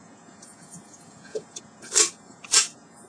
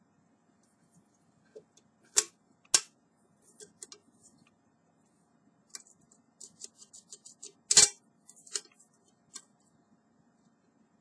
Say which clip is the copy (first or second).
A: first